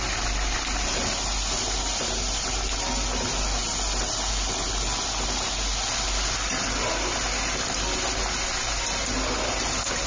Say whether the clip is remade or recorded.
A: recorded